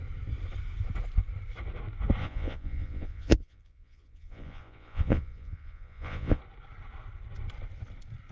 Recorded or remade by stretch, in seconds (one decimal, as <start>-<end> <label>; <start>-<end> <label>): 0.0-2.2 recorded; 2.2-6.4 remade; 6.4-8.3 recorded